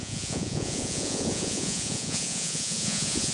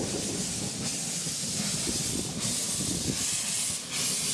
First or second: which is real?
second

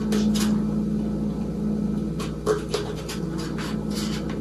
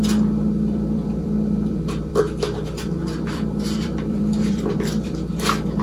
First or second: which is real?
first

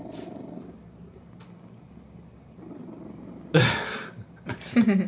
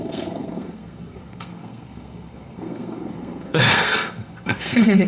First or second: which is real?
first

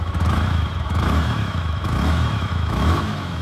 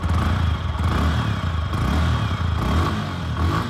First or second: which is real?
second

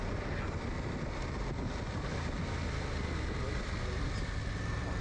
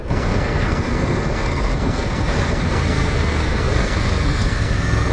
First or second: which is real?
first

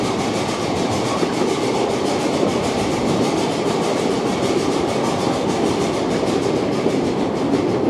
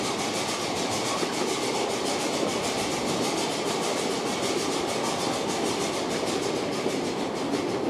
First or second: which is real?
second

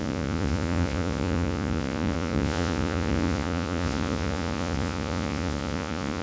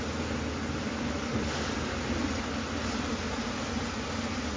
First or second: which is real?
second